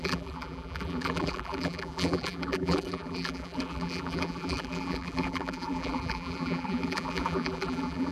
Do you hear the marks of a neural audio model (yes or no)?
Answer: yes